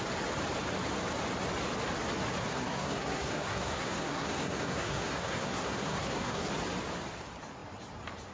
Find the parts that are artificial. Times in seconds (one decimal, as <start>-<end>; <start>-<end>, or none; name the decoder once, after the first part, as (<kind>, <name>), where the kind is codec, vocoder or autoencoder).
2.4-6.5 (codec, SNAC)